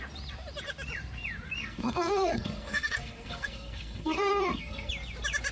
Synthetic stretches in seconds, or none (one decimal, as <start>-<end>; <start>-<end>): 1.6-4.9